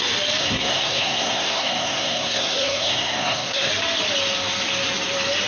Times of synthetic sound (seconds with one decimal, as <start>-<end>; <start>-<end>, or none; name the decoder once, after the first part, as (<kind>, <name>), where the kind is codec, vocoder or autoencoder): 0.4-3.7 (codec, SNAC)